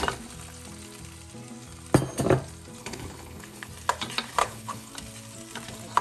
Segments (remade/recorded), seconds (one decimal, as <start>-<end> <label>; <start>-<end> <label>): 0.0-2.8 recorded; 2.8-3.7 remade; 3.7-4.4 recorded; 4.4-4.9 remade; 4.9-6.0 recorded